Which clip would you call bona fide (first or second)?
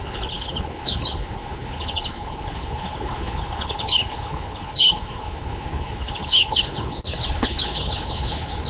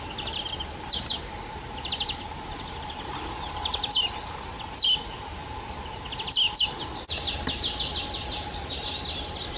second